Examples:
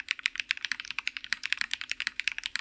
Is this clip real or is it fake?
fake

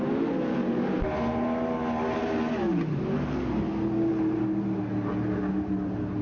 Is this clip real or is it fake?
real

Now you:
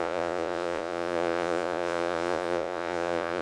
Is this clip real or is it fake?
fake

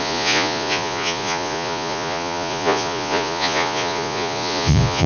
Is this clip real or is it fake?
fake